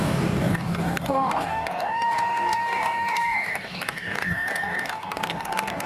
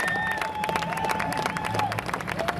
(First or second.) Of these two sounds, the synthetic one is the first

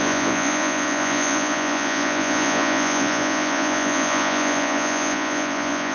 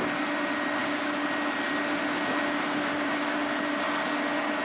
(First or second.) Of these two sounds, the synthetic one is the first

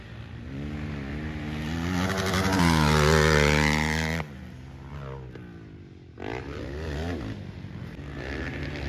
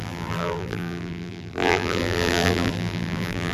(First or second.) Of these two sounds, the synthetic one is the second